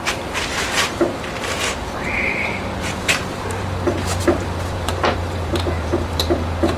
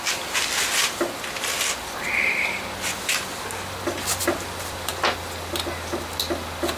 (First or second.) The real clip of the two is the second